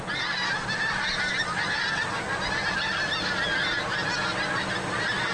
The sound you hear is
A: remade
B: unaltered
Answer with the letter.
B